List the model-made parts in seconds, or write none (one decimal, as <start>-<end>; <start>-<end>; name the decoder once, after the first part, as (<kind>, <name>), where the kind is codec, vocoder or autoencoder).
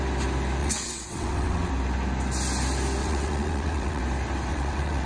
0.6-1.7 (vocoder, WaveNeXt); 3.0-4.0; 4.5-5.1